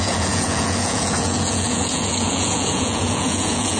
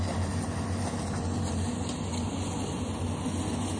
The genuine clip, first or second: second